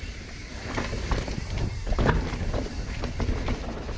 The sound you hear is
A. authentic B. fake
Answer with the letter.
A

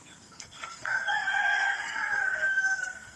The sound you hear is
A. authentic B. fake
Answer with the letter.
B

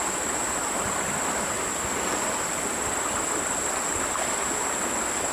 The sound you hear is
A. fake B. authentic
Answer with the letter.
B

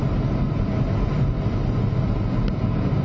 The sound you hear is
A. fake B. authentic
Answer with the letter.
B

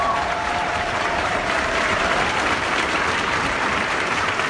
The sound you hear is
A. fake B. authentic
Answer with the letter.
A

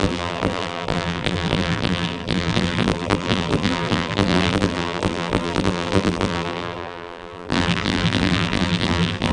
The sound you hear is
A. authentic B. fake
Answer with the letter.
B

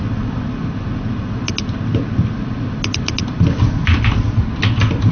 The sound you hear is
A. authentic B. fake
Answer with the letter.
A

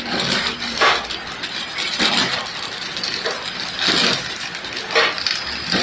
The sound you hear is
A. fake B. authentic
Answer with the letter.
B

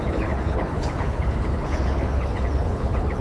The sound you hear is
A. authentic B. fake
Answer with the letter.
B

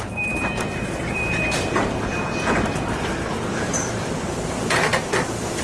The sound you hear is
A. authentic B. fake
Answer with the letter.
B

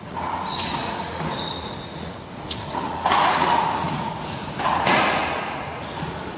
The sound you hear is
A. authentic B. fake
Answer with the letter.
B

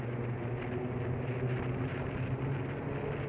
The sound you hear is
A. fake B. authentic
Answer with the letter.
B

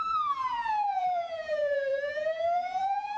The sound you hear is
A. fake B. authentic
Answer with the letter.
A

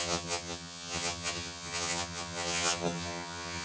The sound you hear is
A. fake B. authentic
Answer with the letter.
A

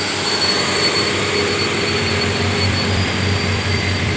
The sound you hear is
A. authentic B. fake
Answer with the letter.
B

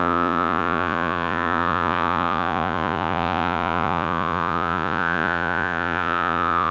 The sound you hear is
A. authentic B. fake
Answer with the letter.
B